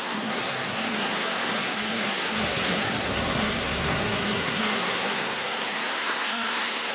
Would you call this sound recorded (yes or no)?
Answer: no